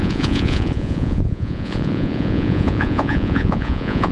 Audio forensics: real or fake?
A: fake